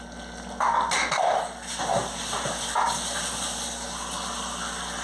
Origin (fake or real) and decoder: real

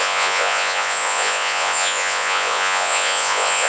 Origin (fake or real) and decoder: fake, vocoder, Vocos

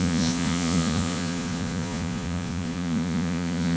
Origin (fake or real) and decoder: fake, vocoder, Vocos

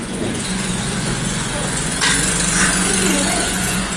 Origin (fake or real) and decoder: fake, vocoder, Vocos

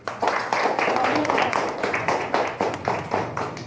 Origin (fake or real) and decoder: fake, vocoder, Vocos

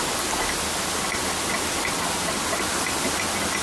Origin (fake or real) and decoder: real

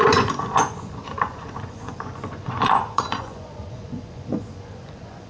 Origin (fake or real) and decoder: fake, vocoder, Vocos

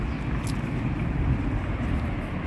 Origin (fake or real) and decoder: real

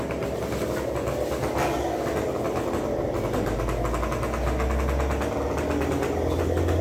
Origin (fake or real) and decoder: real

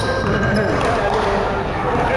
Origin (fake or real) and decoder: real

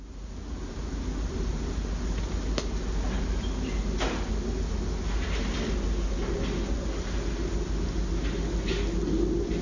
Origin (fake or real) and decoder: real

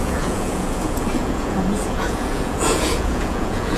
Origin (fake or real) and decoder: fake, vocoder, Vocos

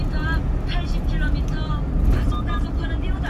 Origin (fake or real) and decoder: real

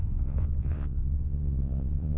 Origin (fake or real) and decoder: fake, vocoder, Vocos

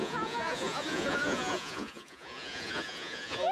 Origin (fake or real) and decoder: fake, vocoder, Vocos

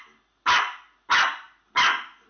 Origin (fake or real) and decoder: real